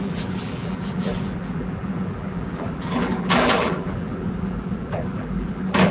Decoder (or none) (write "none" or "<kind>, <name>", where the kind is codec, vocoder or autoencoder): vocoder, BigVGAN v2